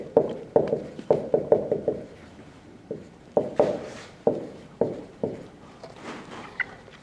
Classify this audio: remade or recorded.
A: remade